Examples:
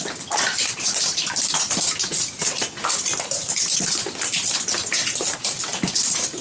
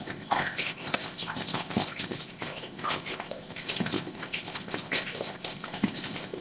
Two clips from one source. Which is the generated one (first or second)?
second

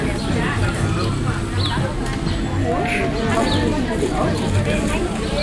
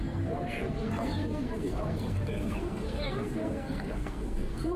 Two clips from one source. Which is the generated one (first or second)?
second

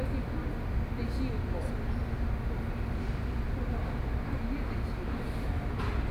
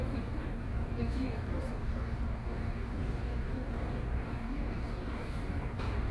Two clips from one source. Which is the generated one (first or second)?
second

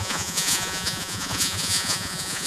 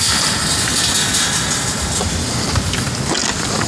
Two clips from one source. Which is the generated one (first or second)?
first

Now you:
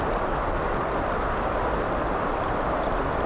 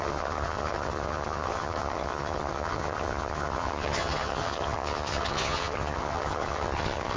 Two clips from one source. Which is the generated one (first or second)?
second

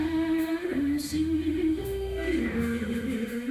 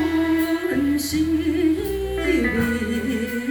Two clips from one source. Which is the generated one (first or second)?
first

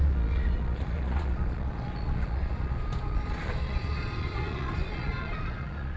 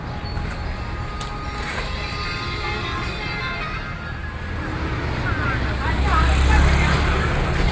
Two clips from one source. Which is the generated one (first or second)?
first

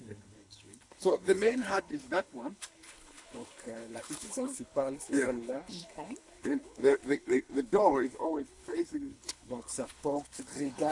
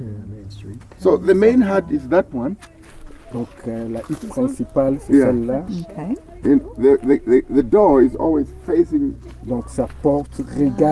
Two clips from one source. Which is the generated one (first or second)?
first